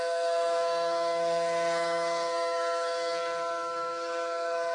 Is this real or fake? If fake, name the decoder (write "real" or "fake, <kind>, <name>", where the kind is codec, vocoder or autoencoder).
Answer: fake, codec, SNAC